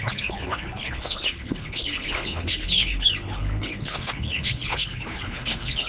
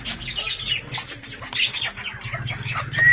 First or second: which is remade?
first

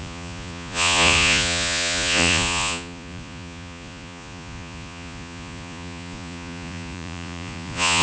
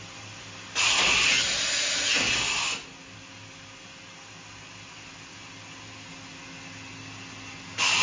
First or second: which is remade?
first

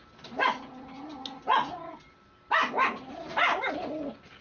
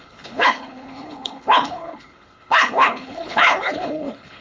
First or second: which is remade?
second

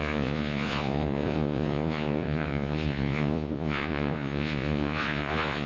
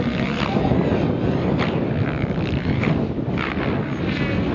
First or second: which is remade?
first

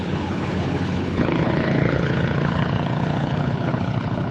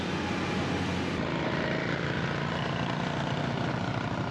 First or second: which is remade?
first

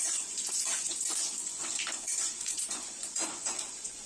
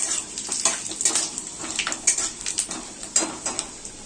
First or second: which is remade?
first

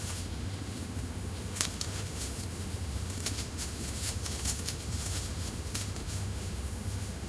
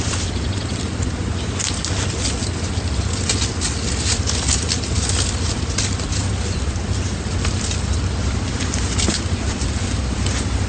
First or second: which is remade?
first